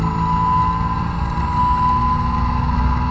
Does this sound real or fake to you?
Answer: real